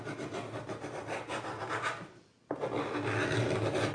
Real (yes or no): yes